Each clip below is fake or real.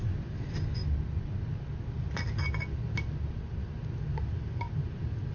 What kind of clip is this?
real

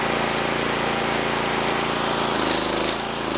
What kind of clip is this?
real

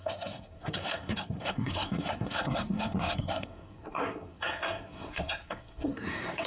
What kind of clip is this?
fake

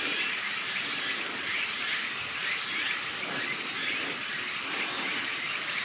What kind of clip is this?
real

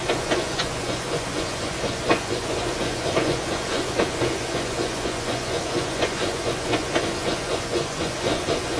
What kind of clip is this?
fake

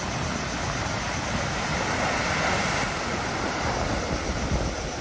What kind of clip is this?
real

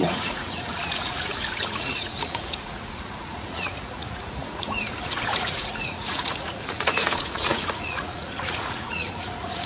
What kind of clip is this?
fake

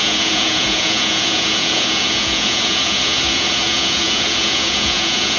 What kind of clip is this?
fake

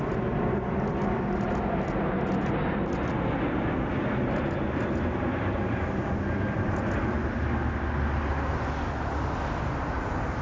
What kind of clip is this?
real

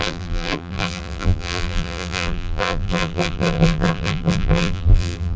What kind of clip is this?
fake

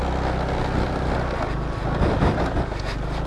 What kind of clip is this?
real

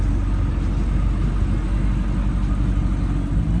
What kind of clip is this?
real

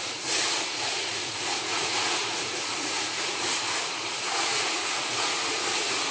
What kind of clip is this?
fake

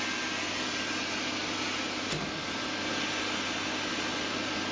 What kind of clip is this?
real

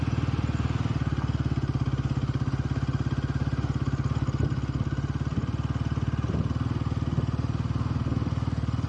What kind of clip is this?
real